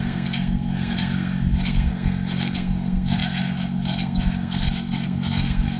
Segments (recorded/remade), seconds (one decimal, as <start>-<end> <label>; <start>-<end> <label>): 0.0-5.8 remade